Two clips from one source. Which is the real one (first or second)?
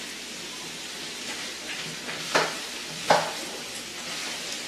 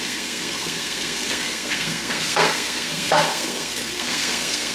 first